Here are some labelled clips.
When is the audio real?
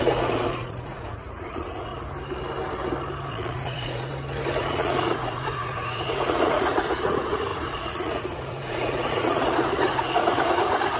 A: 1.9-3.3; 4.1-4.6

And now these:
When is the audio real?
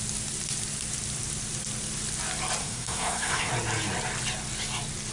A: 0.0-2.6; 3.5-5.1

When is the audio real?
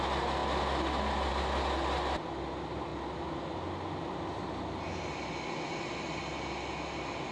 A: 0.0-7.3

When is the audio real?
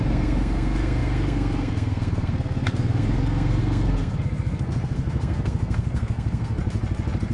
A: 6.6-7.3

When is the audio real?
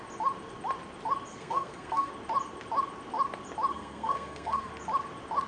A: 0.0-1.3; 2.1-3.7; 4.7-5.5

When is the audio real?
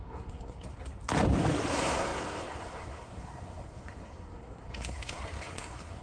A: 0.7-1.7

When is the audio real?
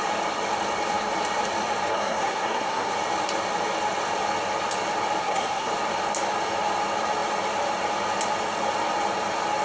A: 0.0-1.9; 2.9-5.2; 5.7-9.6